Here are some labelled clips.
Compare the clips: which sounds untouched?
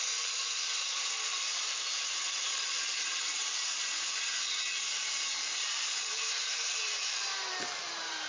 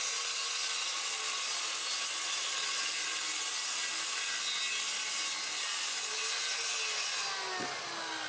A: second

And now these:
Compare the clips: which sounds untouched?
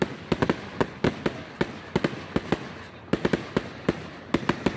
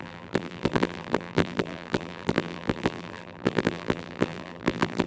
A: first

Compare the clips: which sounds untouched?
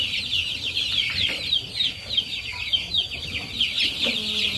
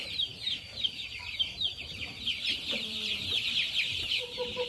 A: first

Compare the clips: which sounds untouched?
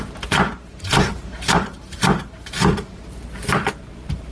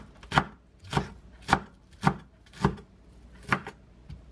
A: second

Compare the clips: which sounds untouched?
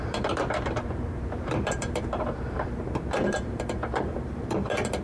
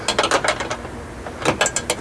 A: second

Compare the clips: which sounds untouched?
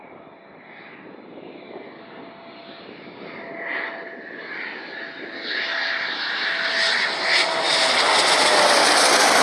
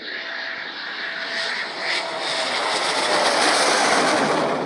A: first